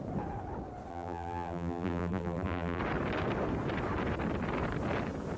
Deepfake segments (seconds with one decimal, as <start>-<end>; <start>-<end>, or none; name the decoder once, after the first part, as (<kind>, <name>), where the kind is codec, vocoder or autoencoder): 0.9-2.8 (vocoder, BigVGAN v2)